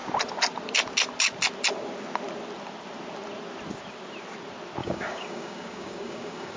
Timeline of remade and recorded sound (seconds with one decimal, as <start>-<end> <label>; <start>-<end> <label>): 0.0-4.8 recorded; 4.8-6.6 remade